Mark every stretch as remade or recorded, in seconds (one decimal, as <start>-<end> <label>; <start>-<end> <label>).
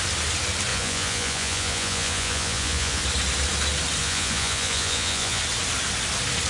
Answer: 0.0-0.7 recorded; 0.7-3.0 remade; 3.0-4.0 recorded; 4.0-5.4 remade; 5.4-6.5 recorded